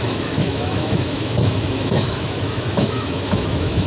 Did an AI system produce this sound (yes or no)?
yes